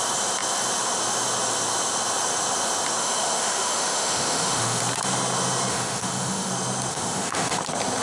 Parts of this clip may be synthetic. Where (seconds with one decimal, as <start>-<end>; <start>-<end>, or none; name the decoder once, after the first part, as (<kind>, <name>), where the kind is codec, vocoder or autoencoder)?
3.0-4.8 (autoencoder, DAC-VAE); 5.7-6.5; 6.9-7.6